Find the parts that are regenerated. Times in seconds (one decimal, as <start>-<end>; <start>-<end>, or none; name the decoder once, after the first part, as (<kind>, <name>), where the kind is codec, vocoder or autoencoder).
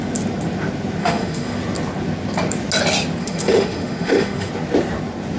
1.0-1.6 (autoencoder, DAC-VAE); 3.2-4.5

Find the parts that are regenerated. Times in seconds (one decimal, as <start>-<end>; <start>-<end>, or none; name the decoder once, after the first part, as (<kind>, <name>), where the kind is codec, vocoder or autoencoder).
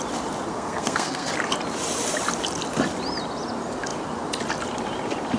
0.5-1.3 (codec, SNAC)